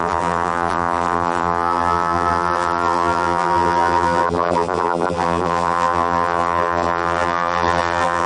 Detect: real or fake fake